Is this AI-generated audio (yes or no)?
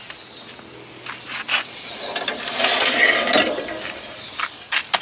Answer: no